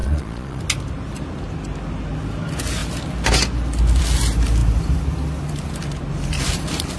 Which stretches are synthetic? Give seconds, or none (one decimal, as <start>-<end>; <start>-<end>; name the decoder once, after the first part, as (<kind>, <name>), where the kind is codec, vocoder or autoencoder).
0.0-0.6 (vocoder, Vocos)